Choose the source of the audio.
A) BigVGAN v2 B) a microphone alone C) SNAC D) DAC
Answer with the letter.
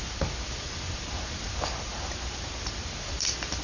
A